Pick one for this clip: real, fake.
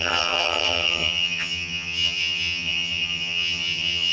fake